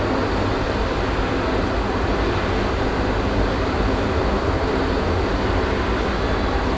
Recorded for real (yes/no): yes